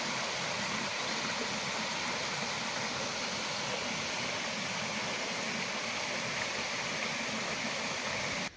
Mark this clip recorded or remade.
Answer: recorded